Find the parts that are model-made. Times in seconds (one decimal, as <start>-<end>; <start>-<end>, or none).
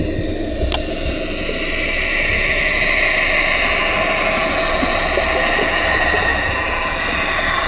none